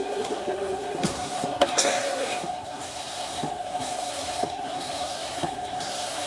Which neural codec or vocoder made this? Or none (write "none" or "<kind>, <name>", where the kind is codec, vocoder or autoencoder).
codec, SNAC